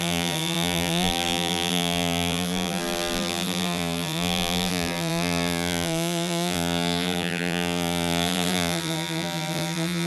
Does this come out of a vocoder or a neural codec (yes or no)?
yes